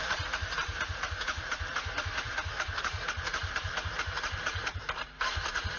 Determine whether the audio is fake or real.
fake